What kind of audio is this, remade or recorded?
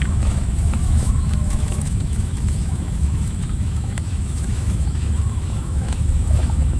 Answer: remade